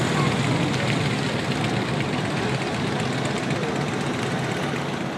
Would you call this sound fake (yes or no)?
no